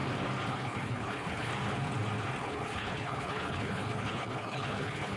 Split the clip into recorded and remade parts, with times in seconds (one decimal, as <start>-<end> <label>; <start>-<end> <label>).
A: 0.0-0.5 recorded; 0.5-1.5 remade; 1.5-2.4 recorded; 2.4-5.2 remade